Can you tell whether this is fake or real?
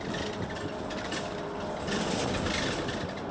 real